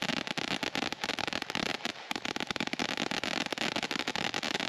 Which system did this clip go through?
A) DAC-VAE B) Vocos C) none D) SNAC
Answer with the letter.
A